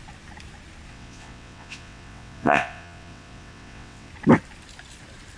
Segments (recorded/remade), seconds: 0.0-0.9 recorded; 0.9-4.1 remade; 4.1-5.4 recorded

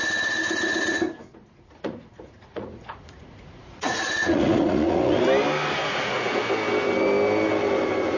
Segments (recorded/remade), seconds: 0.0-1.3 recorded; 1.3-5.2 remade; 5.2-5.8 recorded; 5.8-6.4 remade; 6.4-8.2 recorded

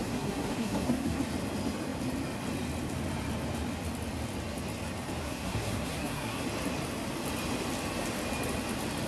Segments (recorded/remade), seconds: 0.0-1.2 remade; 1.2-5.2 recorded; 5.2-6.4 remade; 6.4-9.1 recorded

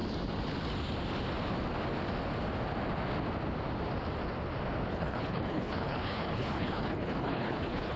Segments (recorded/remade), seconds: 0.0-4.9 recorded; 4.9-8.0 remade

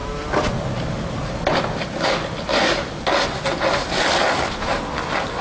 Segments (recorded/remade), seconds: 0.0-5.4 recorded

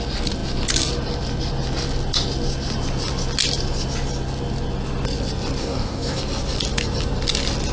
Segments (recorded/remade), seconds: 0.0-5.6 recorded; 5.6-6.2 remade; 6.2-7.7 recorded

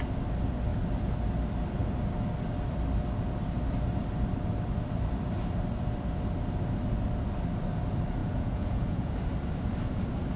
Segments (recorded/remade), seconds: 0.0-8.2 recorded; 8.2-9.1 remade; 9.1-10.4 recorded

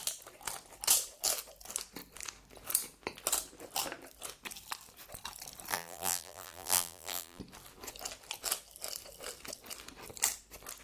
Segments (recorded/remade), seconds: 0.0-5.7 recorded; 5.7-7.4 remade; 7.4-10.8 recorded